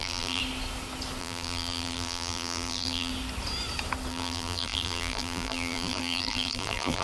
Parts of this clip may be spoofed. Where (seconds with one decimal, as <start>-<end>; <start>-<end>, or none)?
0.0-0.4; 1.2-3.1; 4.1-7.0